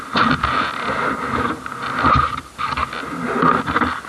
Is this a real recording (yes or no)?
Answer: yes